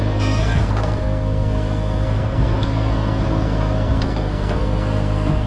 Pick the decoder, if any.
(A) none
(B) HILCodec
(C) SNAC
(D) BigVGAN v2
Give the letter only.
C